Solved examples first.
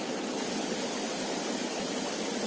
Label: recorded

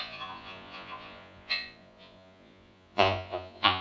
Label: remade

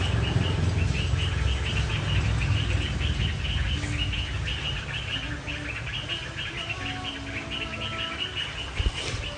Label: recorded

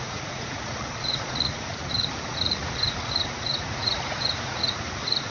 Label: remade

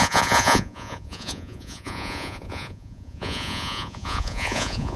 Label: remade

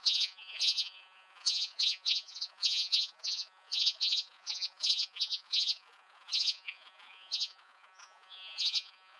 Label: remade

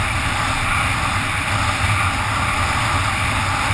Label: recorded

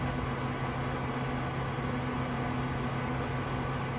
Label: recorded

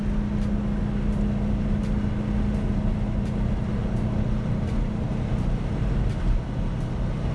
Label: recorded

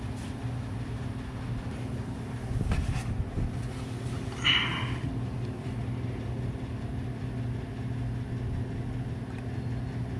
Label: recorded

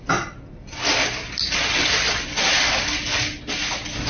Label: recorded